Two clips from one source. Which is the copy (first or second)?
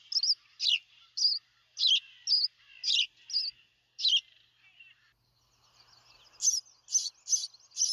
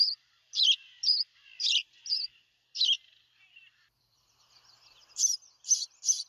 second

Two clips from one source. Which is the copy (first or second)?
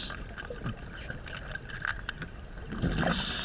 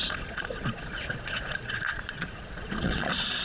second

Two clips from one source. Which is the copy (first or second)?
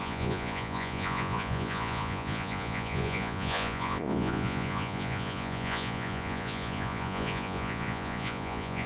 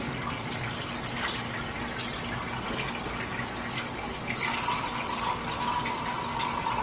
first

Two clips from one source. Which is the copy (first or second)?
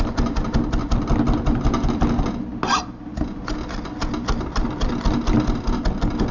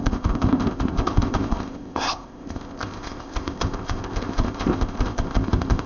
second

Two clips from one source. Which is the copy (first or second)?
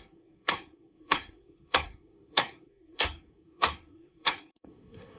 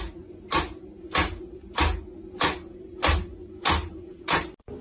first